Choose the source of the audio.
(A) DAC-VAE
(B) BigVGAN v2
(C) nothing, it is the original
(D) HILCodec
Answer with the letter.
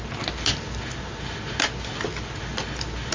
C